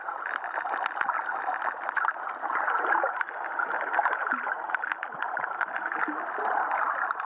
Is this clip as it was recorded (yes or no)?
yes